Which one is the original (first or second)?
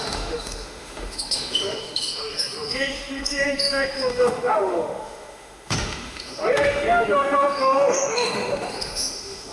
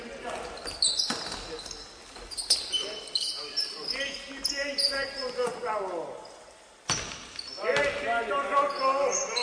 second